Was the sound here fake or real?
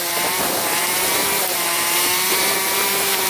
fake